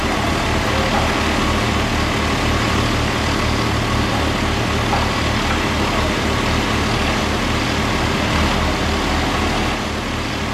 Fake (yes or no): no